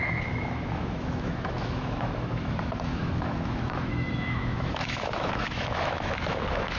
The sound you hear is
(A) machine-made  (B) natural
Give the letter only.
A